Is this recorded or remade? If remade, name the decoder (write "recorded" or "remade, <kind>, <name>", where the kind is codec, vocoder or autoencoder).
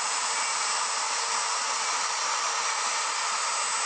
recorded